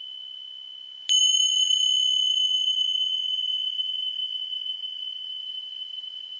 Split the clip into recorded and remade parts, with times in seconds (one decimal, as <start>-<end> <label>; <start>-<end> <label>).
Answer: 0.0-1.2 recorded; 1.2-1.8 remade; 1.8-2.3 recorded; 2.3-6.4 remade